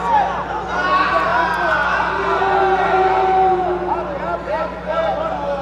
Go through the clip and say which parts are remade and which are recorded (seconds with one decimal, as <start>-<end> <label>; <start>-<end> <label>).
0.0-5.6 recorded